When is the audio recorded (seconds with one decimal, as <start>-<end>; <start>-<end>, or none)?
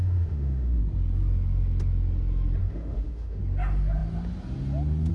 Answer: 0.8-2.6; 3.4-5.1